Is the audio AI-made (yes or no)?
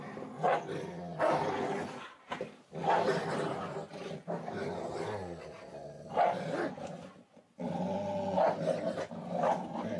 no